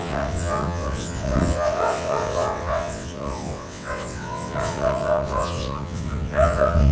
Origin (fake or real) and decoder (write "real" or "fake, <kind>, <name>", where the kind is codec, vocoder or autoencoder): fake, vocoder, WaveNeXt